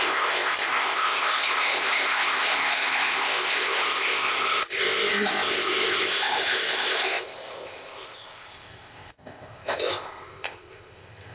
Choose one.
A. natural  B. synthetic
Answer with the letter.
B